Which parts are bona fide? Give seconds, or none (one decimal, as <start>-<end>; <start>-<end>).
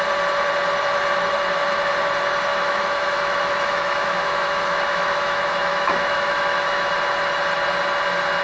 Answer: 0.0-2.5; 6.8-8.4